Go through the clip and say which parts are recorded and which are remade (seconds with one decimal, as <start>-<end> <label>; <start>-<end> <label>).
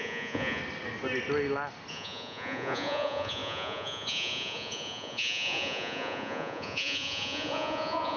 0.0-0.6 remade; 0.6-1.9 recorded; 1.9-8.2 remade